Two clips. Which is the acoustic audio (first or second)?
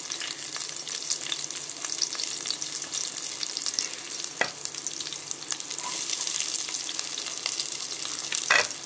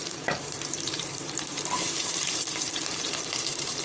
first